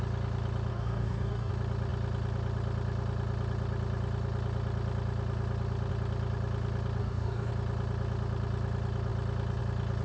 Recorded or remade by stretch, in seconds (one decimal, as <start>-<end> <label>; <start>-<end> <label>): 0.0-0.7 recorded; 0.7-1.5 remade; 1.5-7.0 recorded; 7.0-7.5 remade; 7.5-10.0 recorded